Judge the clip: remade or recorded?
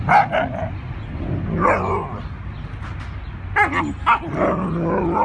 recorded